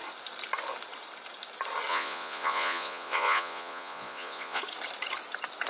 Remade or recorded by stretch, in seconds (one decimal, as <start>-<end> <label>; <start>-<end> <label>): 0.0-1.9 recorded; 1.9-4.6 remade; 4.6-5.7 recorded